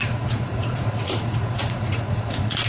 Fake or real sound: fake